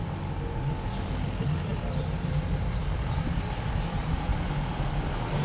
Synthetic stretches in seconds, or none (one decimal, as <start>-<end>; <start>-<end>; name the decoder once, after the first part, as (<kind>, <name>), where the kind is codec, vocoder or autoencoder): none